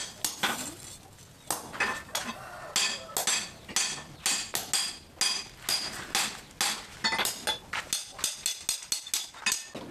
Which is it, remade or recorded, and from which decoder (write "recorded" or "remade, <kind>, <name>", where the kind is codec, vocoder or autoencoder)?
recorded